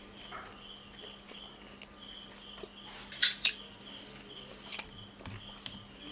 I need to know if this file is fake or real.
real